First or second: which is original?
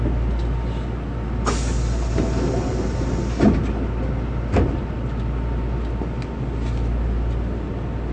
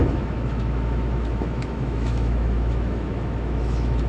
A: first